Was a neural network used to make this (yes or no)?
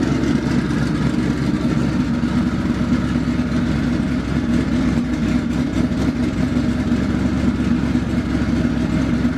no